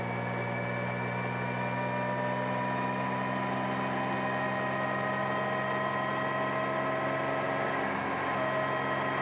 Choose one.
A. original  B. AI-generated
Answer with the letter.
A